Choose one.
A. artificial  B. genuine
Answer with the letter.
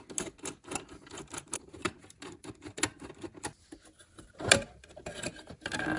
B